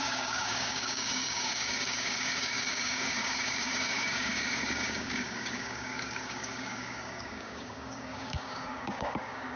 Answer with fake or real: fake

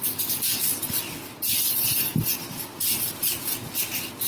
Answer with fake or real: real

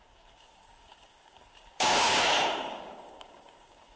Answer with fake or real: fake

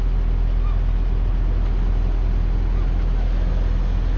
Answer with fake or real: real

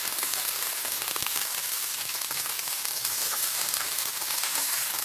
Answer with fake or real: fake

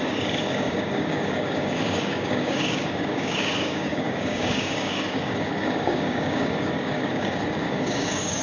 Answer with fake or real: fake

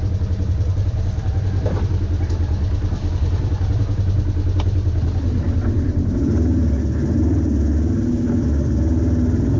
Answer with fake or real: real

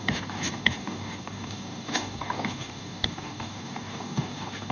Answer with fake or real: fake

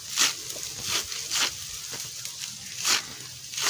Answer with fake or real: real